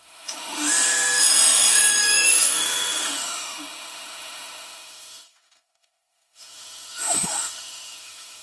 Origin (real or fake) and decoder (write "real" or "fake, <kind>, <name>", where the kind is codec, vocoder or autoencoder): fake, autoencoder, DAC-VAE